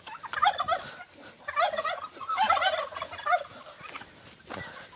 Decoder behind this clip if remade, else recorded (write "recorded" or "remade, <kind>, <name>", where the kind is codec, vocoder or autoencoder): recorded